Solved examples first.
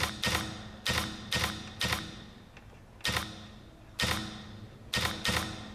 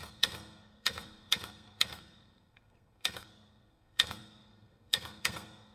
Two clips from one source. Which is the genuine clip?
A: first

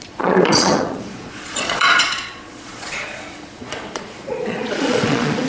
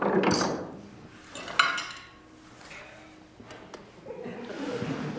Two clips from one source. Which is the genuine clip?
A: second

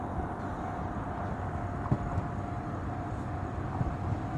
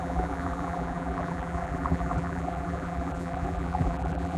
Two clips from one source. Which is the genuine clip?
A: first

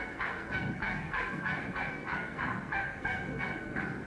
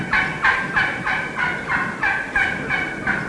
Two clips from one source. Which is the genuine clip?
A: second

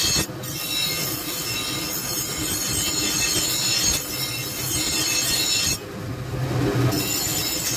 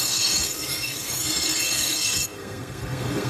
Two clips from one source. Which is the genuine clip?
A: first